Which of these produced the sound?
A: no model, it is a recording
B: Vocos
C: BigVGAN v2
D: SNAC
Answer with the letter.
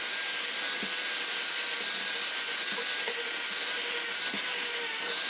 A